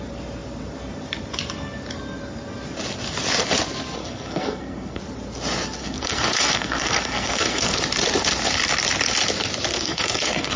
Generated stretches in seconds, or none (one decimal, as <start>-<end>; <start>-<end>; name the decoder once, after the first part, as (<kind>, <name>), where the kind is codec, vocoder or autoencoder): 4.0-5.0 (codec, SNAC); 5.8-7.8; 9.7-10.6

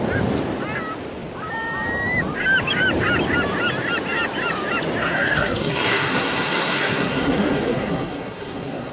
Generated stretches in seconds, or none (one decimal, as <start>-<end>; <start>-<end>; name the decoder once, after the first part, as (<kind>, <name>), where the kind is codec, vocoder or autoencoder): 5.0-8.9 (codec, SNAC)

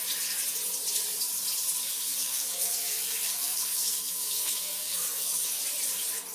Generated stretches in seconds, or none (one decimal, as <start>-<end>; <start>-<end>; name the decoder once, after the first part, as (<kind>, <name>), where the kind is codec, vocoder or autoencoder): 1.8-5.6 (codec, SNAC)

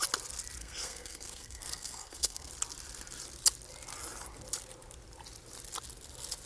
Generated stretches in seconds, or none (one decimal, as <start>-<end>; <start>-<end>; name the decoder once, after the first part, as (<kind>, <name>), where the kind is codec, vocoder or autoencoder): 0.6-2.5 (codec, SNAC)